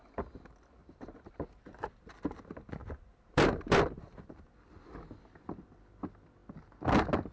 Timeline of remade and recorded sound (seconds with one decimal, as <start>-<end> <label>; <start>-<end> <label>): 0.0-0.8 recorded; 0.8-1.3 remade; 1.3-2.8 recorded; 2.8-4.2 remade; 4.2-7.3 recorded